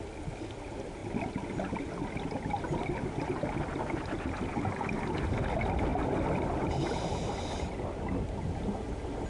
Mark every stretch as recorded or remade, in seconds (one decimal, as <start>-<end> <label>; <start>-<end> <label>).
0.0-9.3 recorded